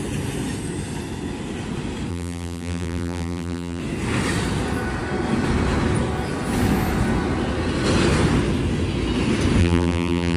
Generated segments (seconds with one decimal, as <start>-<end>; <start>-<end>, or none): 2.1-3.8; 9.6-10.4